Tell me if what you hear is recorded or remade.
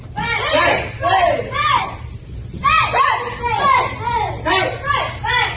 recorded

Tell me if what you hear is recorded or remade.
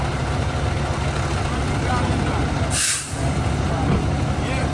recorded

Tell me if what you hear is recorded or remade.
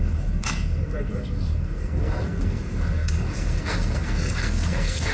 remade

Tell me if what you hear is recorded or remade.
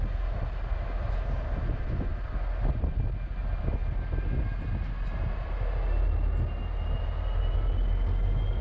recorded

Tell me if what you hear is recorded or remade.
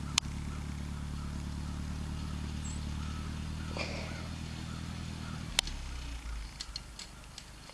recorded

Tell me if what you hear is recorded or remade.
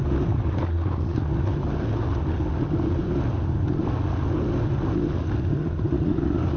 recorded